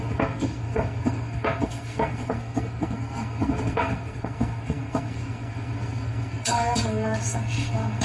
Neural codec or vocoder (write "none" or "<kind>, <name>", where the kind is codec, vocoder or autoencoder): codec, SNAC